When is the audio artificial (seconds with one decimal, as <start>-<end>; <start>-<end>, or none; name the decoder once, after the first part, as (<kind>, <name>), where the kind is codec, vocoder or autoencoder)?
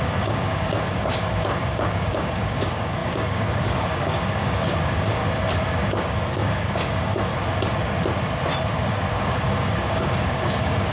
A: 0.0-5.2 (codec, DAC); 5.9-7.3; 9.1-10.9